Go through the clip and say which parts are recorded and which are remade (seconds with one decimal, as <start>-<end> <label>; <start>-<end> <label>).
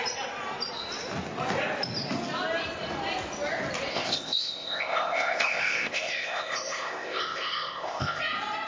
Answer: 0.0-3.9 recorded; 3.9-8.2 remade; 8.2-8.7 recorded